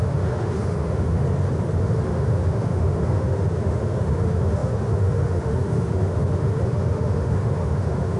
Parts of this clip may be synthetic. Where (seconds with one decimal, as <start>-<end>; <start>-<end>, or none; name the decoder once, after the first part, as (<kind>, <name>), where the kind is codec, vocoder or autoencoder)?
0.0-1.2 (autoencoder, DAC-VAE); 1.8-8.2